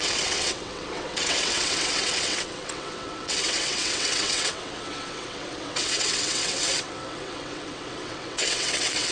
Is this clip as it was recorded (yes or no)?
no